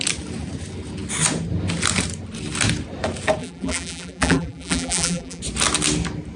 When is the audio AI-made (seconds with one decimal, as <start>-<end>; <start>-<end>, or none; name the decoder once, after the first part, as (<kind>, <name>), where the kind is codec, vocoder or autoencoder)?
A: 3.4-5.4 (vocoder, BigVGAN v2)